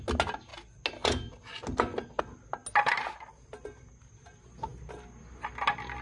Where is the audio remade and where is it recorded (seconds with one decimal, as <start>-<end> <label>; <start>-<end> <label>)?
0.0-6.0 recorded